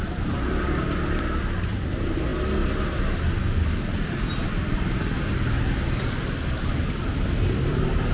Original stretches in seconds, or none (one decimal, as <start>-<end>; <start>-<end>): 0.0-8.1